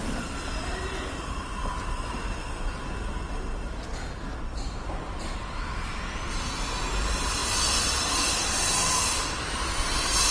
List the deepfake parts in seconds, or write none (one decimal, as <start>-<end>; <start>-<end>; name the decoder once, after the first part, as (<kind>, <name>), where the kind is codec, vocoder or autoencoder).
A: none

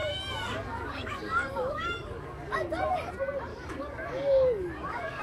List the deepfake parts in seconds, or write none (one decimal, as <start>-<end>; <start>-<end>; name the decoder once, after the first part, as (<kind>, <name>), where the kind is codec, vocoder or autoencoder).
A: 0.0-3.1 (codec, DAC); 3.5-5.2

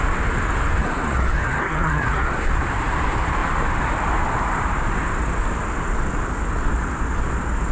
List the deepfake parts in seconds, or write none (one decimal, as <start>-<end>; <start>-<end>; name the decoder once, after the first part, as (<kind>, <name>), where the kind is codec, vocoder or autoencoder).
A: 0.8-2.5 (codec, SNAC)

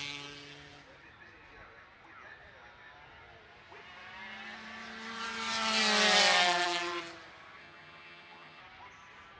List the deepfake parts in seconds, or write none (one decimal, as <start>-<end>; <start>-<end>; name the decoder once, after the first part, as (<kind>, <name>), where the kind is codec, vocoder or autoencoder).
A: 7.6-8.6 (vocoder, HiFi-GAN)

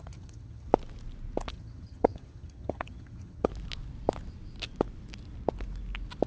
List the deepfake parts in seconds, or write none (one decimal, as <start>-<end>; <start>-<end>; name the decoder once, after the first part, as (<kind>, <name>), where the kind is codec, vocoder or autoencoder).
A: 0.0-0.7 (vocoder, HiFi-GAN); 1.5-3.5

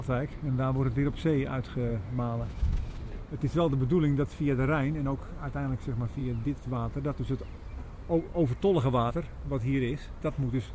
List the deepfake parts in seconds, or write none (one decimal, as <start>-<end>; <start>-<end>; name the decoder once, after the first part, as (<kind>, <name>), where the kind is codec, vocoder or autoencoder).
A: 1.9-3.0 (autoencoder, DAC-VAE)